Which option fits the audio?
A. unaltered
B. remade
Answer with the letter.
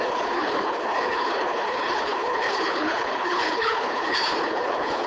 B